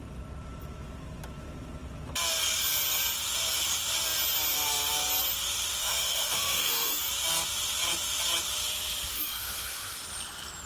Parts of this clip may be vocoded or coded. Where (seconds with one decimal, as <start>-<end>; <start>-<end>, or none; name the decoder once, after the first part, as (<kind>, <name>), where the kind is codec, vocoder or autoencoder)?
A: 5.8-7.0 (autoencoder, DAC-VAE); 9.1-10.0